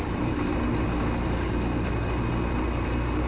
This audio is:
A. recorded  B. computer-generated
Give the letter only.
A